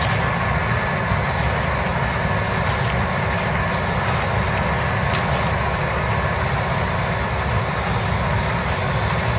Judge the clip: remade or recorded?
recorded